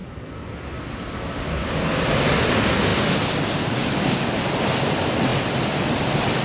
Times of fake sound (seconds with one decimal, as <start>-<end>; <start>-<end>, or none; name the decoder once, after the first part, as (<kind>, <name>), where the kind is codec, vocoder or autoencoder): none